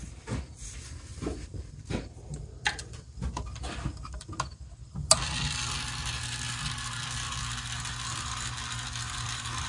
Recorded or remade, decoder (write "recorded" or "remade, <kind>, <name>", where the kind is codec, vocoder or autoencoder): recorded